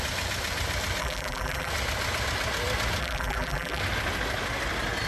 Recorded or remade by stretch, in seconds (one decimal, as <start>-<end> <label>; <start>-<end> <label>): 0.0-1.0 recorded; 1.0-1.7 remade; 1.7-3.0 recorded; 3.0-3.8 remade; 3.8-5.1 recorded